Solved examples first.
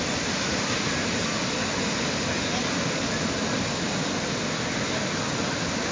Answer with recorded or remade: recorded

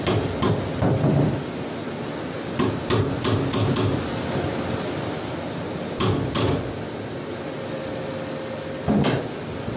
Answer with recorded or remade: recorded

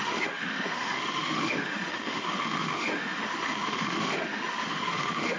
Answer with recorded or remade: remade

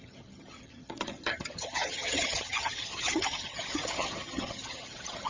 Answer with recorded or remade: remade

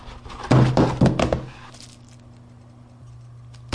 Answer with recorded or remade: recorded